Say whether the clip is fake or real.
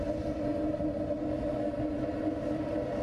real